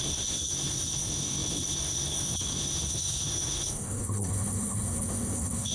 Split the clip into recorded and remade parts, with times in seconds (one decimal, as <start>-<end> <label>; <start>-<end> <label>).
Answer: 0.0-5.7 remade